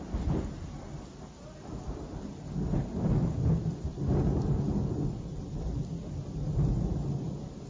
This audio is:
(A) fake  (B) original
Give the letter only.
B